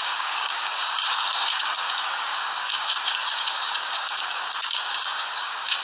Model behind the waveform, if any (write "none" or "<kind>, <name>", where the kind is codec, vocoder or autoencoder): codec, DAC